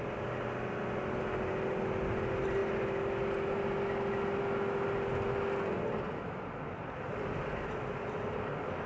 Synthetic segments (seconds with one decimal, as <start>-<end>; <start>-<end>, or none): none